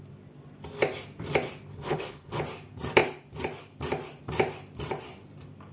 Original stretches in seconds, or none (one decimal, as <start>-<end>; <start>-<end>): 0.0-1.7; 2.4-5.7